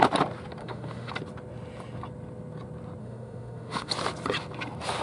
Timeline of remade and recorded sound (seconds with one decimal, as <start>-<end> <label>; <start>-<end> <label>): 0.0-0.6 recorded; 0.6-1.1 remade; 1.1-3.0 recorded; 3.0-3.9 remade; 3.9-5.0 recorded

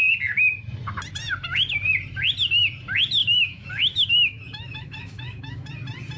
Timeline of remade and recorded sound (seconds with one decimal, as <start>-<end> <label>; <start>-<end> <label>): 0.0-3.2 recorded; 3.2-5.7 remade; 5.7-6.2 recorded

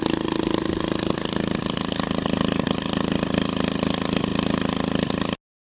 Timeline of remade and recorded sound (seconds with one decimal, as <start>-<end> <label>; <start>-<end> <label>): 0.0-5.7 recorded

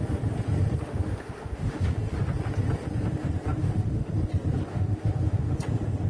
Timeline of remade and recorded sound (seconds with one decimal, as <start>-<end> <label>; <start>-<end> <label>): 0.0-0.9 recorded; 0.9-2.0 remade; 2.0-3.6 recorded; 3.6-4.1 remade; 4.1-4.7 recorded; 4.7-5.5 remade; 5.5-6.1 recorded

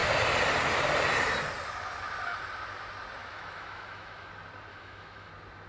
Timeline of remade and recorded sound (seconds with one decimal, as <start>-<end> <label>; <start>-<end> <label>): 0.0-3.2 recorded; 3.2-4.3 remade; 4.3-4.7 recorded; 4.7-5.3 remade; 5.3-5.7 recorded

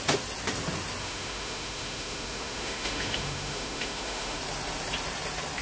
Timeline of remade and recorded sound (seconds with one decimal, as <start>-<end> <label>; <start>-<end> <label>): 0.0-1.0 recorded; 1.0-4.4 remade; 4.4-5.6 recorded